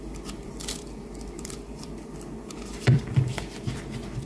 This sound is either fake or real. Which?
fake